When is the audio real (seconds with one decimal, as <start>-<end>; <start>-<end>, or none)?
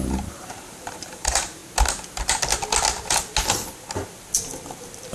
1.6-5.1